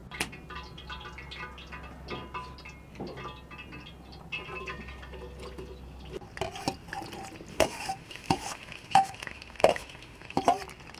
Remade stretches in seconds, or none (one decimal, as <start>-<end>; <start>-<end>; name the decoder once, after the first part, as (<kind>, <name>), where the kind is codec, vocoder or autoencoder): 7.5-10.4 (autoencoder, DAC-VAE)